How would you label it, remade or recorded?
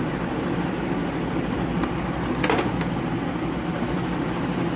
recorded